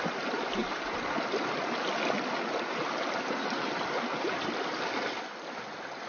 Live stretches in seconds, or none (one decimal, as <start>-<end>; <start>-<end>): 0.0-6.1